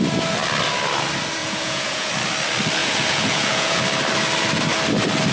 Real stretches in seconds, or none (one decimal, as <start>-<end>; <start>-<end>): 0.0-1.4; 2.1-2.8; 3.8-5.3